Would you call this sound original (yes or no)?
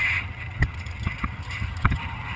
no